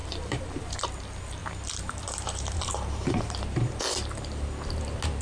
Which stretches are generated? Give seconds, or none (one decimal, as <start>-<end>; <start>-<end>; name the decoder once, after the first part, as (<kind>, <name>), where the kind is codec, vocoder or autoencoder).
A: 0.0-0.8 (vocoder, BigVGAN v2); 1.4-3.8